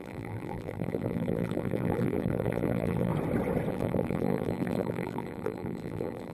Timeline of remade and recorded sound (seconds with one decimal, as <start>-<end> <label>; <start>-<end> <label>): 0.0-3.1 remade; 3.1-3.7 recorded; 3.7-6.3 remade